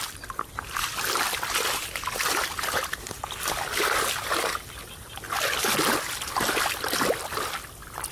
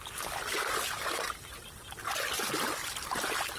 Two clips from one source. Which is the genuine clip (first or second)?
second